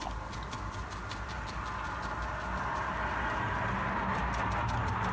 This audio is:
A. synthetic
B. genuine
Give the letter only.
B